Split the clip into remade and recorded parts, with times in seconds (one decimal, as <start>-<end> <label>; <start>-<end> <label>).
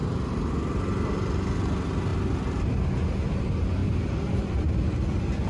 0.0-3.8 recorded; 3.8-4.7 remade; 4.7-5.5 recorded